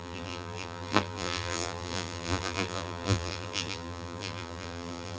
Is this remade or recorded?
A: remade